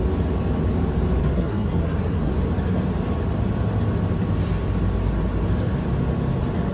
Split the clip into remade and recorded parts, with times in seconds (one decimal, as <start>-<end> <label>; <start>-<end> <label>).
0.0-1.2 recorded; 1.2-2.3 remade; 2.3-6.7 recorded